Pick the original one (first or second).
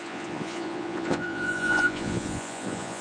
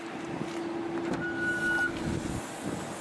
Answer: second